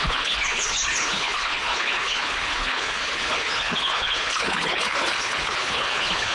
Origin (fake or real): fake